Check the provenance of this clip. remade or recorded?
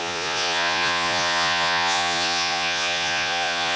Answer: remade